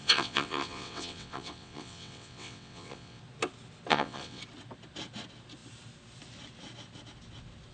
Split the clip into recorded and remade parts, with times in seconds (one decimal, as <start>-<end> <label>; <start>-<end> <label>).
0.0-3.2 remade; 3.2-3.9 recorded; 3.9-4.4 remade; 4.4-7.7 recorded